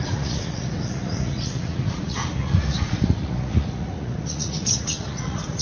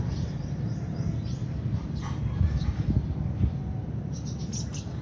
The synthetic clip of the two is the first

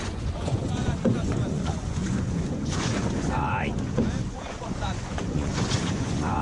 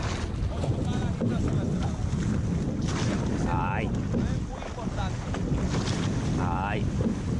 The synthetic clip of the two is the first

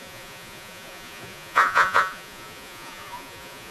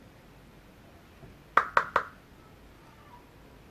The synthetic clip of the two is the first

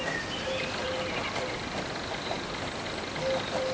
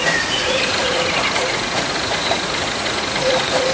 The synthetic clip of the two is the second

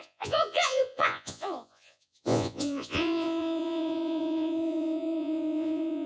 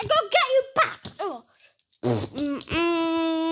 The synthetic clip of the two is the first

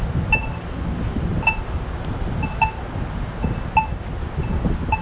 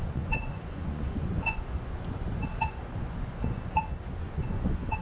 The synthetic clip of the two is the second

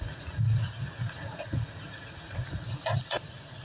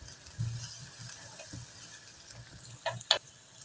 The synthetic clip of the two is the first